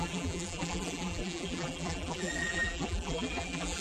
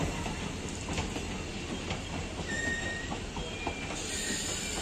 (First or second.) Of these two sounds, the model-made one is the first